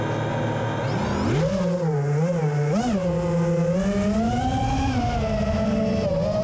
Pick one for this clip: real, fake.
real